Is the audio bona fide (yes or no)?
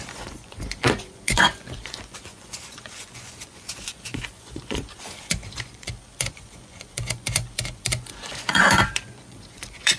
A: no